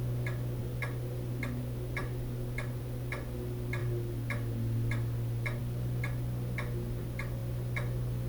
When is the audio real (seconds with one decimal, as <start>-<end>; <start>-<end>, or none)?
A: 0.0-8.3